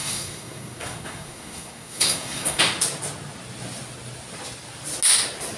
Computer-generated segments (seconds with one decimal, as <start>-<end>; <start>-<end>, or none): 0.0-2.6